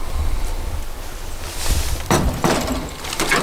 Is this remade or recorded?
recorded